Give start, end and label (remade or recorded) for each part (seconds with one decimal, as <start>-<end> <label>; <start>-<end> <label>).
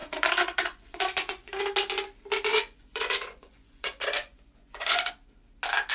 0.0-1.6 remade; 1.6-2.5 recorded; 2.5-5.1 remade; 5.1-5.9 recorded